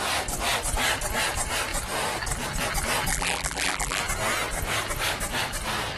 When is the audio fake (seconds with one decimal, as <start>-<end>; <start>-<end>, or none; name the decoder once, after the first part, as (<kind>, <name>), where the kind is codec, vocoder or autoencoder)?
3.1-4.0 (vocoder, BigVGAN v2)

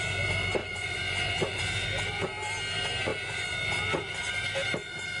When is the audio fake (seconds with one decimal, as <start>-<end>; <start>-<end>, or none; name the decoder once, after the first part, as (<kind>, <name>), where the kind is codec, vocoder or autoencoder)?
0.6-1.6 (vocoder, Vocos)

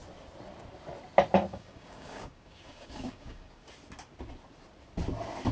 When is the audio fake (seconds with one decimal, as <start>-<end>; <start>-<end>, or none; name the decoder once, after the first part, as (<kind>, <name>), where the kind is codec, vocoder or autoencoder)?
1.5-3.7 (codec, DAC)

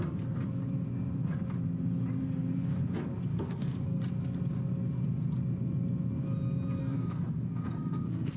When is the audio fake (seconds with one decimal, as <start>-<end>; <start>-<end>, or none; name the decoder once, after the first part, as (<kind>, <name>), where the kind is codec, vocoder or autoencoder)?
3.3-4.0 (codec, SNAC); 6.8-8.4

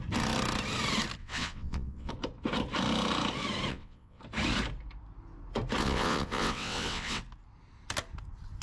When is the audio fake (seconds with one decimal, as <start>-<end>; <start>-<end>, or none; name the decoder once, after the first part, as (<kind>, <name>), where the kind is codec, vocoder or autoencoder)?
1.2-2.1 (vocoder, WaveNeXt); 3.7-4.2; 5.8-7.2

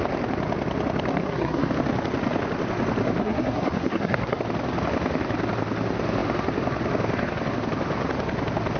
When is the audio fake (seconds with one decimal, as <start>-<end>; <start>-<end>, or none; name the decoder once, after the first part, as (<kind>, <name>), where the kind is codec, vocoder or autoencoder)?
1.1-1.7 (codec, SNAC); 3.2-4.4

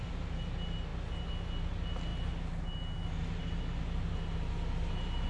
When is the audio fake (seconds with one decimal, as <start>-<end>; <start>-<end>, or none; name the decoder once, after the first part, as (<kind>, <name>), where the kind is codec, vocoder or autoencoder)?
none

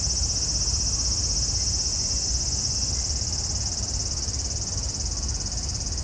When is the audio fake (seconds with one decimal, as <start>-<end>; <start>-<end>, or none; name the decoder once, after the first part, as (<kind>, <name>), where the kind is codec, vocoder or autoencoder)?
1.9-2.9 (vocoder, Vocos)